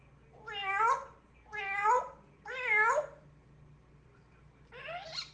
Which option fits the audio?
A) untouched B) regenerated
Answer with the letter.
A